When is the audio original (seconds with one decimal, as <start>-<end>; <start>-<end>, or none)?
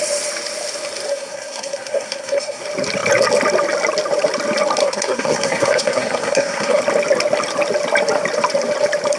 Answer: 0.0-1.1; 2.6-4.8; 6.8-9.2